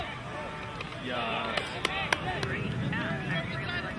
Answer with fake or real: real